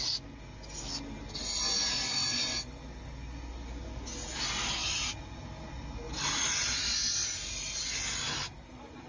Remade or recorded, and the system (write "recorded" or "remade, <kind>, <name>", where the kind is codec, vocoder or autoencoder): recorded